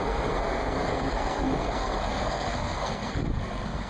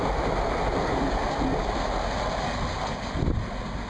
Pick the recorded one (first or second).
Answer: second